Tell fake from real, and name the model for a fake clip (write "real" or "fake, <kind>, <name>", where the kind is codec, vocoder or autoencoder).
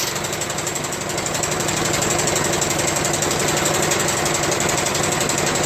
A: real